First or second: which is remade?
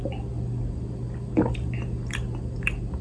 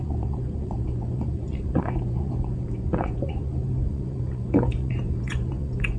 second